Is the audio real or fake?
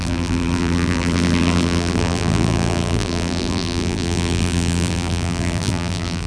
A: fake